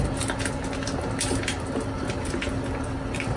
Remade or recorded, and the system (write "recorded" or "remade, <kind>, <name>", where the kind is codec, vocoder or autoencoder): recorded